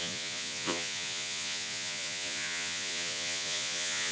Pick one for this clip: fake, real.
fake